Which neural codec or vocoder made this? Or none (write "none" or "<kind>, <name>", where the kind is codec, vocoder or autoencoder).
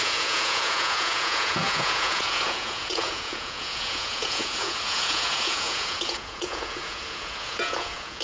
vocoder, Vocos